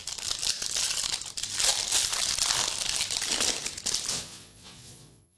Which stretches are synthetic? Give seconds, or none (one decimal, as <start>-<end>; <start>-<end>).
4.1-5.4